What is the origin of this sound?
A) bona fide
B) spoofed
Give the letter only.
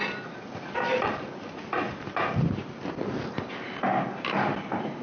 A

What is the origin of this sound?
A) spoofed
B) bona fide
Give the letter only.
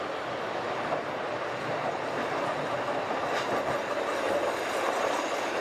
B